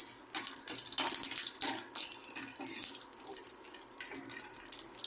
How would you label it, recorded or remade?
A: recorded